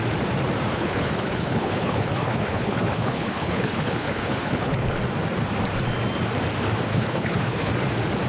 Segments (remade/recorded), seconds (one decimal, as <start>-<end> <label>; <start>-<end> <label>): 0.0-0.7 recorded; 0.7-4.9 remade; 4.9-6.9 recorded; 6.9-7.7 remade; 7.7-8.3 recorded